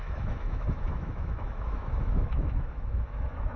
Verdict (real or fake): fake